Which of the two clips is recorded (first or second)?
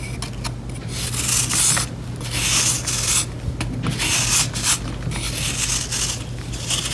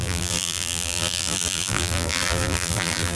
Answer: first